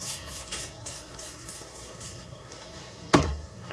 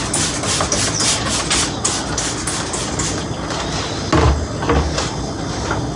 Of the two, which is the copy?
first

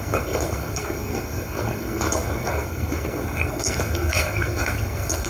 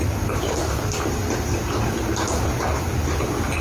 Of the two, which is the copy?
first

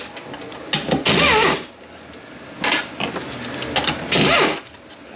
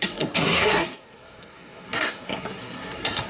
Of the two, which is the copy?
second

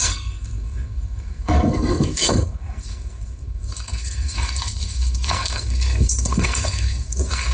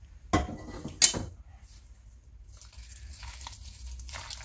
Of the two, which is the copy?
first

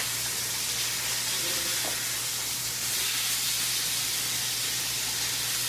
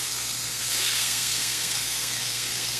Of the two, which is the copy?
second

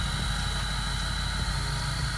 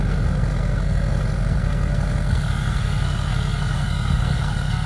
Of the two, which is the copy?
second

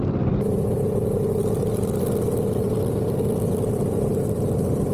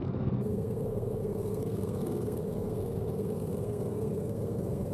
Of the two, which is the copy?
second